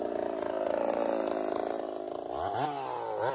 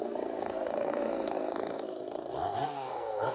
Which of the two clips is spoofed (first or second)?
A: second